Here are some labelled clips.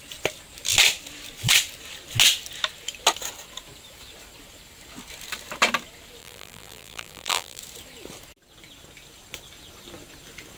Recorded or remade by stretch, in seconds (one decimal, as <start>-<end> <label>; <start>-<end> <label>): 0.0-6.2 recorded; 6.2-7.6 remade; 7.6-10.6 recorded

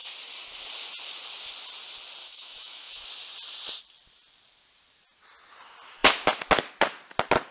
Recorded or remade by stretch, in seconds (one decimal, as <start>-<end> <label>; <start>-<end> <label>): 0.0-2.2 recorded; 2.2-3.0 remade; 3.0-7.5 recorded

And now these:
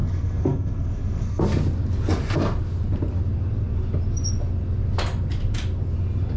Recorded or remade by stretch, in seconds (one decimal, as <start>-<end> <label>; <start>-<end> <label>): 0.0-1.4 remade; 1.4-6.4 recorded

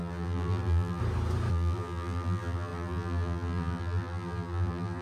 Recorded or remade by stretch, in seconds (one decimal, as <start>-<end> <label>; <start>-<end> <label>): 0.0-1.0 remade; 1.0-1.5 recorded; 1.5-5.0 remade

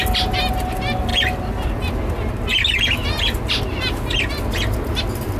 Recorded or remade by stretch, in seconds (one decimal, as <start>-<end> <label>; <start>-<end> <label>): 0.0-5.4 recorded